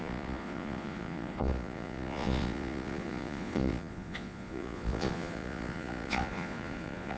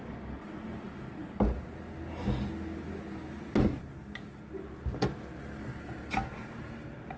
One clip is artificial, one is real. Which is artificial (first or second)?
first